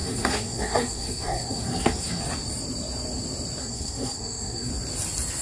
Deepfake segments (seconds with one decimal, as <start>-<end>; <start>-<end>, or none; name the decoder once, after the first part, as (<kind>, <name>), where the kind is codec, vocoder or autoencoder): 0.0-2.2 (codec, SNAC); 3.6-4.7